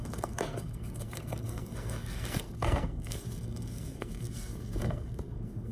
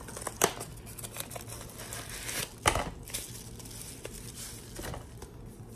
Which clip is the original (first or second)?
second